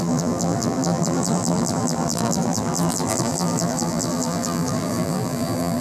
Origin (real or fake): fake